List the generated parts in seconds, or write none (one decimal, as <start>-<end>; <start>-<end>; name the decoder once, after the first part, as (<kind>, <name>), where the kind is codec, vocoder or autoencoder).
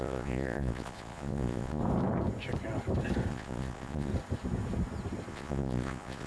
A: 0.0-1.8 (vocoder, Vocos); 3.3-4.1; 5.3-6.3